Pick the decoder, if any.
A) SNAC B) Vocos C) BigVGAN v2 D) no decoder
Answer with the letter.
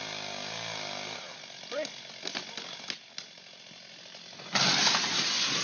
D